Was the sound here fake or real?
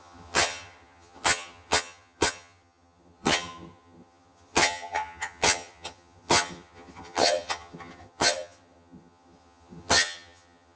fake